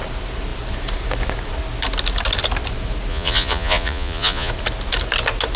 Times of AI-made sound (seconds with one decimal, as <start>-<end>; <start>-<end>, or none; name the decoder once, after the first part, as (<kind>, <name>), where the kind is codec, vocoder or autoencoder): 3.1-4.5 (vocoder, Vocos)